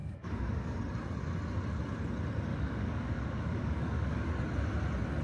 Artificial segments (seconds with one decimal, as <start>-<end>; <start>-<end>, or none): 0.0-0.8; 2.5-4.3